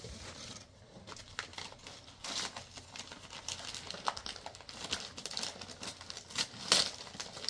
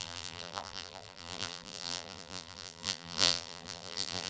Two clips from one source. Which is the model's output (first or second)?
second